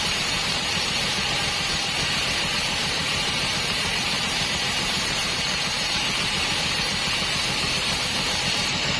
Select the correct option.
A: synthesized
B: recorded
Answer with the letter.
A